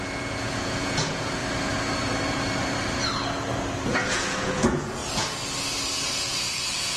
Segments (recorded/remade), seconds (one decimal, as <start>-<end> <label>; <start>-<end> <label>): 0.0-1.4 remade; 1.4-3.8 recorded; 3.8-5.0 remade; 5.0-6.1 recorded; 6.1-7.0 remade